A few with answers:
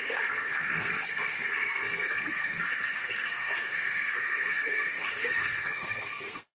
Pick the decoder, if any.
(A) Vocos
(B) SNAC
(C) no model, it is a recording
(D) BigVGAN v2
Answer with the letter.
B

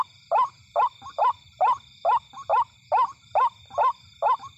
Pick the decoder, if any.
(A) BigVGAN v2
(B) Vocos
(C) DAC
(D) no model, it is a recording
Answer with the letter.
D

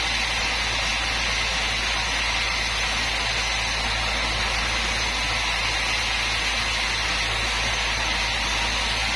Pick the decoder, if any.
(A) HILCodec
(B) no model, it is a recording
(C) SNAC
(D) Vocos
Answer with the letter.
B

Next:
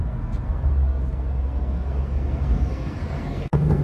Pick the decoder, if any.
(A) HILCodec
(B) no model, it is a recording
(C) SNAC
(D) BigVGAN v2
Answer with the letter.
C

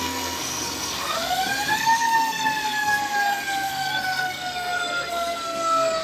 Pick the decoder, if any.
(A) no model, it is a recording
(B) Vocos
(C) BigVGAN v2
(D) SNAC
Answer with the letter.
D